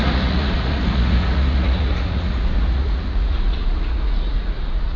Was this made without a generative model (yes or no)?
no